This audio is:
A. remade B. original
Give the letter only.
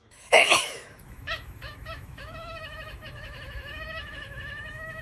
A